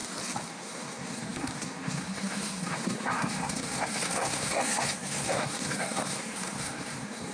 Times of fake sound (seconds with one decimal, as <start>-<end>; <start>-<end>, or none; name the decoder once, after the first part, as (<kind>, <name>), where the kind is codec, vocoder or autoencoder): 0.5-7.3 (codec, SNAC)